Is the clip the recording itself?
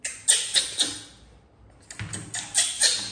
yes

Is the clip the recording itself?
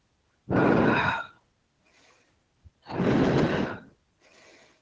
yes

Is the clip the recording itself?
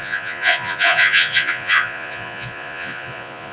no